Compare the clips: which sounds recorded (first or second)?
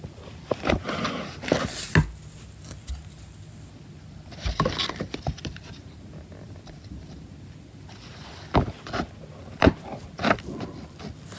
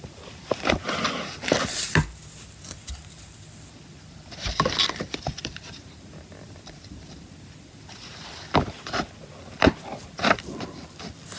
first